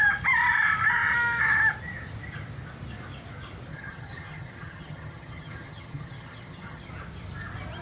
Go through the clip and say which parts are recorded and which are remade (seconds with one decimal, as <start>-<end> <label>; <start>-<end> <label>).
0.0-3.7 recorded; 3.7-6.9 remade; 6.9-7.8 recorded